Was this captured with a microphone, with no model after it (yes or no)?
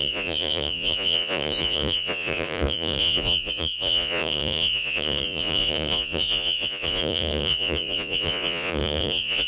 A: no